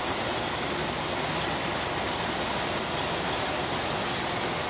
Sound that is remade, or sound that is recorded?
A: recorded